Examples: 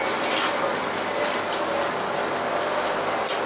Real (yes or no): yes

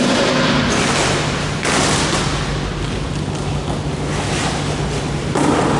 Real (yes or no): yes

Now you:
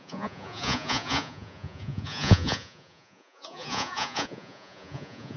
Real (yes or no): no